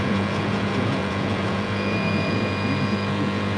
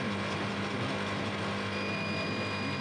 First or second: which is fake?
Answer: first